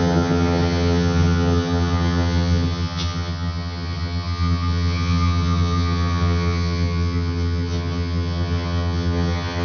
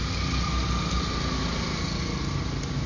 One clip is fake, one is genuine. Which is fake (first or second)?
first